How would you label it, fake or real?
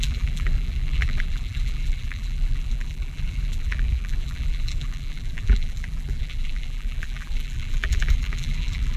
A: fake